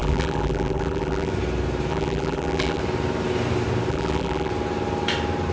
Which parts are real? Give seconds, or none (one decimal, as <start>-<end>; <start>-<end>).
1.3-1.9; 2.8-3.9; 4.5-5.5